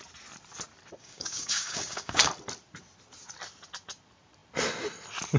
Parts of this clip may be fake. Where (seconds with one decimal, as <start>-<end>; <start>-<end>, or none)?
1.0-2.3